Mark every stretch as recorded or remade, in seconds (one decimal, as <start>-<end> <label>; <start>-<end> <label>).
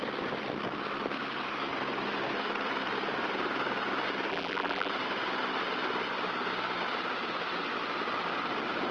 0.0-4.3 recorded; 4.3-4.9 remade; 4.9-8.9 recorded